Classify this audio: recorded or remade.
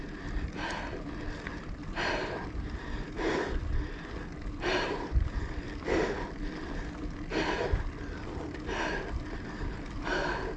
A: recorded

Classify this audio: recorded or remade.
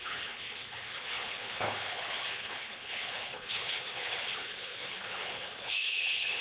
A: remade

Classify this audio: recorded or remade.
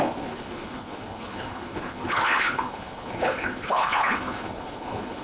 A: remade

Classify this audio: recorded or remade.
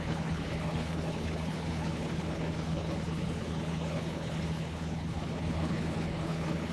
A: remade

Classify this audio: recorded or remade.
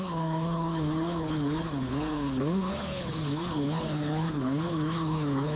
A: remade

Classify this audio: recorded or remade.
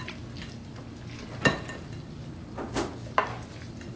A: recorded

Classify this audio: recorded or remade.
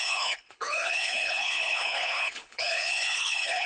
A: remade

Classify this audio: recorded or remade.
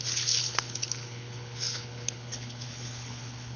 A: remade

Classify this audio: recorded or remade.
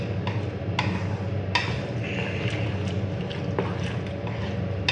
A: recorded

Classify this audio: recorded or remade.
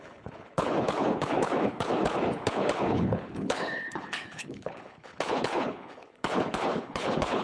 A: remade